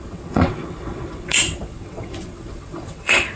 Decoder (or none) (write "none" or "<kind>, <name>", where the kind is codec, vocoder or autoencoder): vocoder, WaveNeXt